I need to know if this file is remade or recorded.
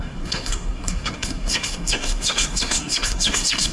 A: remade